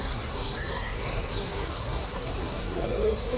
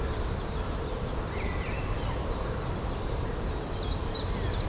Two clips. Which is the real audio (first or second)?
second